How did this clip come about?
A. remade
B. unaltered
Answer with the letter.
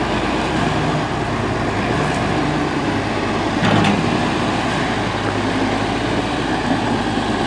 B